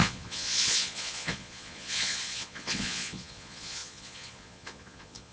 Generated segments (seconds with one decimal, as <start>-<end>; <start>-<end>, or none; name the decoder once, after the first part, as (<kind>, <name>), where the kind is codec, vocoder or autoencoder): 0.0-5.3 (vocoder, Vocos)